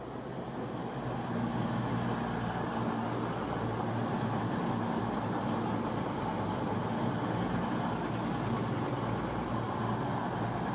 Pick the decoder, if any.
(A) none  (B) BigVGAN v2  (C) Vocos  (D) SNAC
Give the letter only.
A